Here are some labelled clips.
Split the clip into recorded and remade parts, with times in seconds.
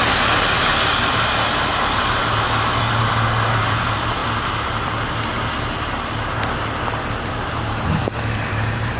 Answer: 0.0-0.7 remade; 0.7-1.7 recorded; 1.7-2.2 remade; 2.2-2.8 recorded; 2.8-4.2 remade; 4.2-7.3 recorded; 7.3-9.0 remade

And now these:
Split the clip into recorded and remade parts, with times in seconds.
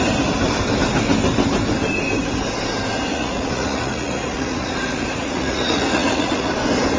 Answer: 0.0-3.1 recorded; 3.1-6.5 remade; 6.5-7.0 recorded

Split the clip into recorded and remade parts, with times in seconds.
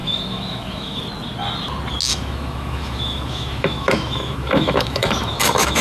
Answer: 0.0-1.0 remade; 1.0-2.1 recorded; 2.1-5.8 remade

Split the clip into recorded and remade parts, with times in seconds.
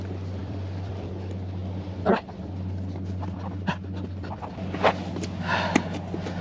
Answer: 0.0-0.4 recorded; 0.4-0.9 remade; 0.9-6.4 recorded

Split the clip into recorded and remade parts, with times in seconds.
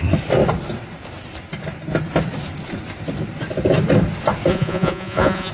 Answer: 0.0-4.5 recorded; 4.5-5.5 remade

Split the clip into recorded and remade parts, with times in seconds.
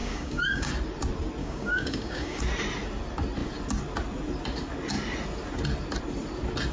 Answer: 0.0-0.7 remade; 0.7-1.4 recorded; 1.4-2.4 remade; 2.4-6.7 recorded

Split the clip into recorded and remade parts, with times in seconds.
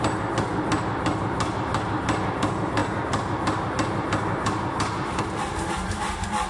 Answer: 0.0-6.5 recorded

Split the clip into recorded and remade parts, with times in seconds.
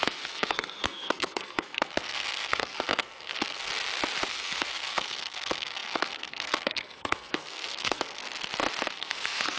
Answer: 0.0-3.7 remade; 3.7-4.3 recorded; 4.3-8.2 remade; 8.2-8.9 recorded; 8.9-9.6 remade